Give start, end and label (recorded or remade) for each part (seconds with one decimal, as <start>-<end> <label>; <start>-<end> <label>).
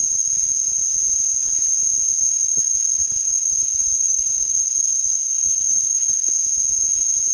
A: 0.0-2.3 recorded; 2.3-6.3 remade; 6.3-7.3 recorded